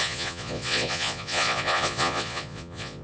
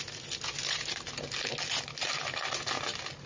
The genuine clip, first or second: second